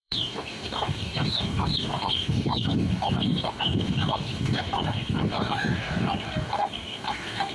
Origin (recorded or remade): remade